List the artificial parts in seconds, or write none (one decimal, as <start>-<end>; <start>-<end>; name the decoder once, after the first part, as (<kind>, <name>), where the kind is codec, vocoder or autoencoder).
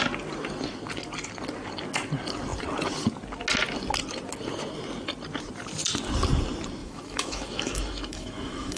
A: 6.8-8.8 (autoencoder, DAC-VAE)